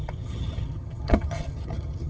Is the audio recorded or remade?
remade